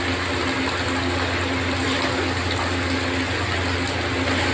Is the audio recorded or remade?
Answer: recorded